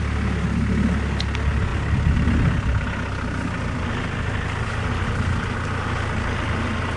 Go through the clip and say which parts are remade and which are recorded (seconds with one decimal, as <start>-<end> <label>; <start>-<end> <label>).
0.0-7.0 recorded